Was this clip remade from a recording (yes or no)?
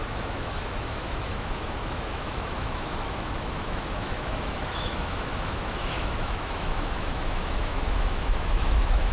yes